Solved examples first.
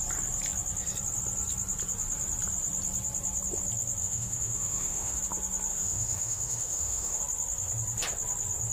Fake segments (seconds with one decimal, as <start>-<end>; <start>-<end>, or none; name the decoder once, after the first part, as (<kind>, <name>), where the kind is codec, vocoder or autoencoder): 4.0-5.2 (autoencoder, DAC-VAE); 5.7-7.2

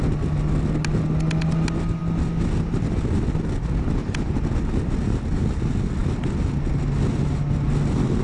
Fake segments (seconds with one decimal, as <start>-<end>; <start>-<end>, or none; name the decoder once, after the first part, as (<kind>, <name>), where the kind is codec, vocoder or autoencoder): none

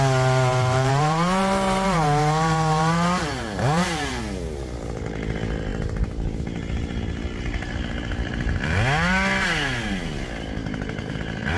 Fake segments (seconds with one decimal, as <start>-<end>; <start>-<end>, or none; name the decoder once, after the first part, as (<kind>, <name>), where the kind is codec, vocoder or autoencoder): 0.5-4.2 (vocoder, BigVGAN v2); 10.6-11.6

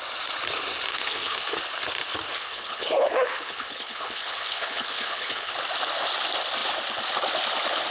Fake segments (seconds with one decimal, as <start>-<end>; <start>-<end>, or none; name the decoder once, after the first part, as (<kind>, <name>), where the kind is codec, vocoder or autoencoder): 0.9-1.6 (codec, HILCodec); 2.3-5.5

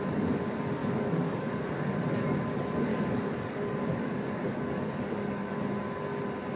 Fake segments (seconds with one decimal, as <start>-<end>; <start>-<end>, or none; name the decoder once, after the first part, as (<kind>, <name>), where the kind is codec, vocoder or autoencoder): 0.8-1.6 (codec, DAC); 2.9-5.5

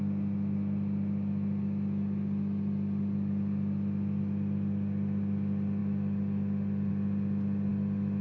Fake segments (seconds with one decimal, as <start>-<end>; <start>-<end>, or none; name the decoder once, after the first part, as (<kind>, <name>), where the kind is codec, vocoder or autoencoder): none